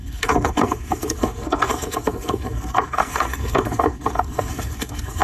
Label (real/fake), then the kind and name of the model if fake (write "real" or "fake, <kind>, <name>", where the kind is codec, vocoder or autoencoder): fake, codec, SNAC